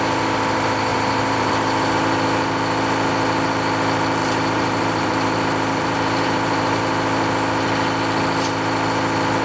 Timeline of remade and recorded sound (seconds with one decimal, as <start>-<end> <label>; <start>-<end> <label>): 0.0-0.9 recorded; 0.9-1.5 remade; 1.5-4.2 recorded; 4.2-6.8 remade; 6.8-9.4 recorded